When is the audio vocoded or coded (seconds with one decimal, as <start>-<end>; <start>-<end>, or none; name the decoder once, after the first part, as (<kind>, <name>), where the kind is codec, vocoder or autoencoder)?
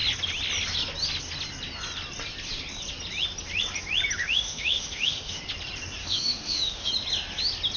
4.2-5.4 (autoencoder, DAC-VAE); 6.0-6.9